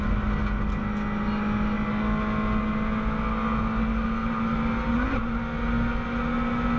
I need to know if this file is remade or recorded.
recorded